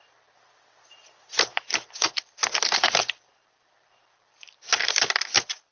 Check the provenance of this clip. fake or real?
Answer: real